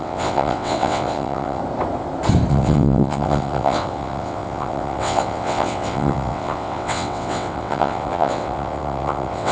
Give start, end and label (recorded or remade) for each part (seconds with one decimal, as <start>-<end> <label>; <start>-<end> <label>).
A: 0.0-1.6 remade; 1.6-2.5 recorded; 2.5-9.5 remade

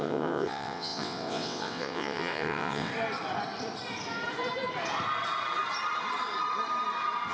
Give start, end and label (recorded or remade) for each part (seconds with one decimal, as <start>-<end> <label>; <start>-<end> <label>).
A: 0.0-2.9 remade; 2.9-7.3 recorded